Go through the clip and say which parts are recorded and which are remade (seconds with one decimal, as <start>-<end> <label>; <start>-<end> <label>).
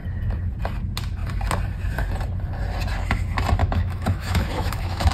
0.0-3.6 recorded; 3.6-5.1 remade